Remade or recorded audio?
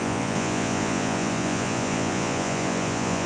remade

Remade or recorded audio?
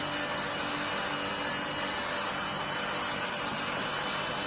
recorded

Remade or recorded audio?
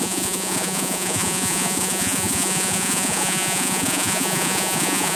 remade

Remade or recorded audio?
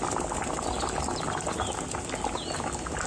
recorded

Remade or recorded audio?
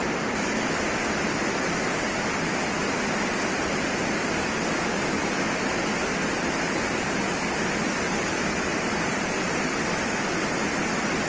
recorded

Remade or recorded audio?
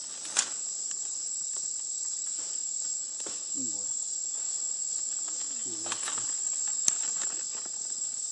recorded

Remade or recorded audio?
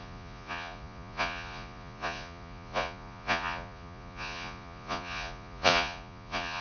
remade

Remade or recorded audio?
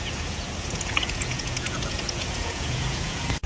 remade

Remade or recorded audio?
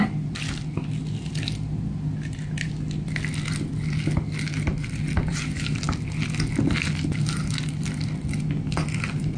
recorded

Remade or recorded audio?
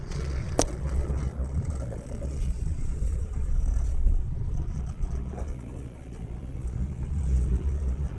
remade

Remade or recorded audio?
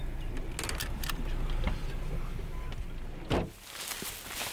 recorded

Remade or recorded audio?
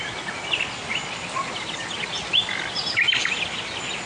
recorded